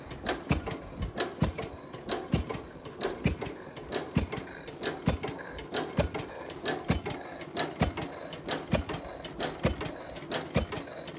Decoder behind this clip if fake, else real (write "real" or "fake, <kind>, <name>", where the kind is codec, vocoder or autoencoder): real